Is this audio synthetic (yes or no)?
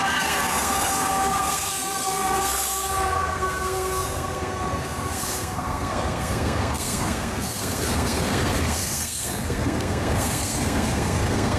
yes